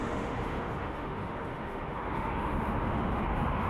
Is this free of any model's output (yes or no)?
no